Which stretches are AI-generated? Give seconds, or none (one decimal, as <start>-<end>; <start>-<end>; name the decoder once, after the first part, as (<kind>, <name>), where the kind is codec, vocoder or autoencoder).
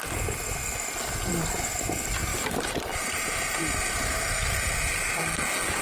2.3-5.2 (vocoder, BigVGAN v2)